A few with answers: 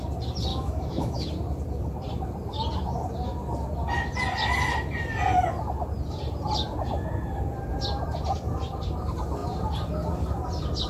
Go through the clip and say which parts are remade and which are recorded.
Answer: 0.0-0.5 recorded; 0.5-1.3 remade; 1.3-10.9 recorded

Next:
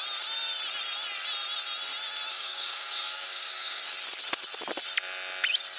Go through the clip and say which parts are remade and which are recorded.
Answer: 0.0-2.3 recorded; 2.3-3.8 remade; 3.8-5.8 recorded

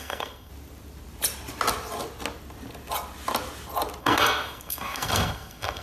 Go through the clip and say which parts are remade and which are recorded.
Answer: 0.0-0.5 remade; 0.5-4.0 recorded; 4.0-5.8 remade

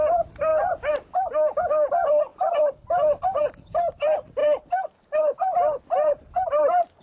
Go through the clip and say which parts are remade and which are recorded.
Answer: 0.0-0.5 remade; 0.5-1.6 recorded; 1.6-2.3 remade; 2.3-3.4 recorded; 3.4-4.4 remade; 4.4-5.8 recorded; 5.8-7.0 remade

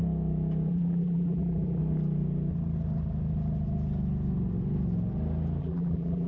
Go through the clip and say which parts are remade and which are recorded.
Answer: 0.0-0.7 recorded; 0.7-1.8 remade; 1.8-5.6 recorded; 5.6-6.3 remade